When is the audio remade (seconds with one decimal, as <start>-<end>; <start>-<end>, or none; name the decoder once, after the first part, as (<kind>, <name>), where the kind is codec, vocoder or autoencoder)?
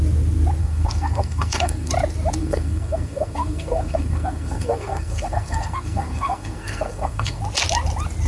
0.6-1.9 (codec, SNAC); 2.4-7.4